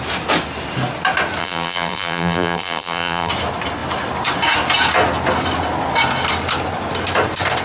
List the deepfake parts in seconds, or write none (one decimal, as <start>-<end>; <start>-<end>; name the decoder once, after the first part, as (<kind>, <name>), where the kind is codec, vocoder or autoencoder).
1.4-3.3 (vocoder, BigVGAN v2)